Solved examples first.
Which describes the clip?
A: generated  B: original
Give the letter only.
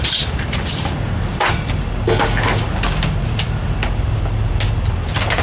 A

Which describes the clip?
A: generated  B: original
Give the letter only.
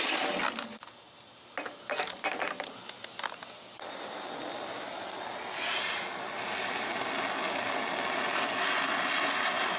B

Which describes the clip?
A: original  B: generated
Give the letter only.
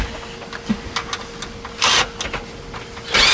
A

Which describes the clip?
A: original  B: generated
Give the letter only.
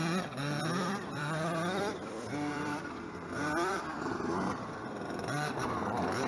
B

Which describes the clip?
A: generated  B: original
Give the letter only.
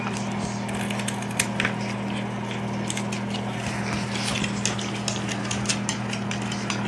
B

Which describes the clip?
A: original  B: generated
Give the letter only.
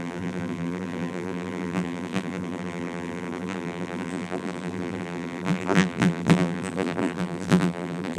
B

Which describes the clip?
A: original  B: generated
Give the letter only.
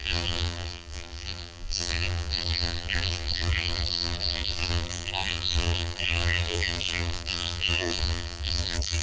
B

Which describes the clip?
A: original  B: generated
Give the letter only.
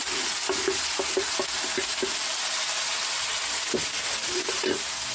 A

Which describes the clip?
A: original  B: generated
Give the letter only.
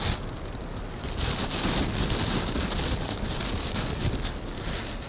A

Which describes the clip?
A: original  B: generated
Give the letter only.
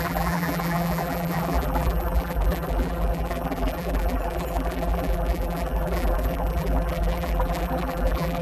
B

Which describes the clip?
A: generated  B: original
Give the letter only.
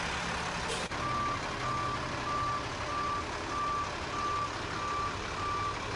B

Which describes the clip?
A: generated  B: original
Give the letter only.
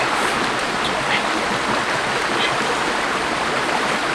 B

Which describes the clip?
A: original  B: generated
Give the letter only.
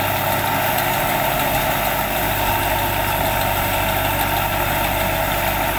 A